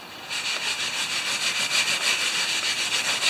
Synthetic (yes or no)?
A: no